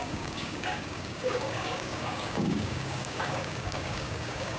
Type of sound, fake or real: fake